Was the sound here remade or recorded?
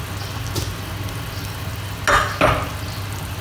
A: recorded